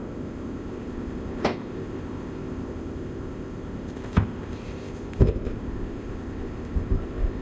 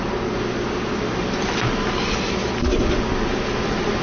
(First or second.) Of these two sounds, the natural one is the second